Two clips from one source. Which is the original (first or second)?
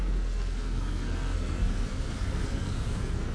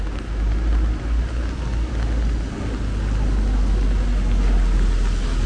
second